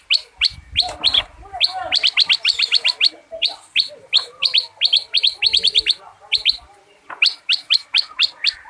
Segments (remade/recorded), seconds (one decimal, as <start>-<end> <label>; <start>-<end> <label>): 0.0-8.7 recorded